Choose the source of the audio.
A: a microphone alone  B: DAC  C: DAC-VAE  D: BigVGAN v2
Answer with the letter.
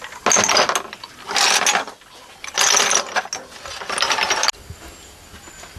A